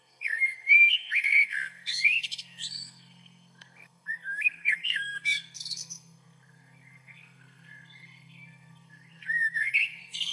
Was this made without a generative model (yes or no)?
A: no